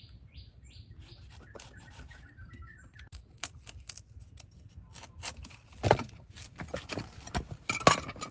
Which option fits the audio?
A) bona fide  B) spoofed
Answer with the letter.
A